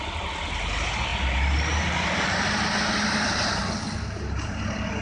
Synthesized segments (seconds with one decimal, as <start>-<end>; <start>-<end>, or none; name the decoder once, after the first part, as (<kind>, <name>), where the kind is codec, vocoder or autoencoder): none